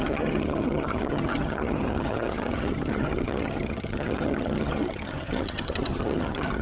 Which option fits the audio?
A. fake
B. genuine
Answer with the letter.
A